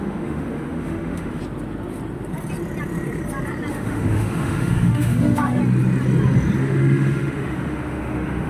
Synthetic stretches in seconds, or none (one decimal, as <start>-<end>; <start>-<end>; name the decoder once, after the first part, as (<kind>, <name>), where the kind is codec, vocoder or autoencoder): 0.0-1.4 (autoencoder, DAC-VAE); 3.7-5.6; 6.6-8.5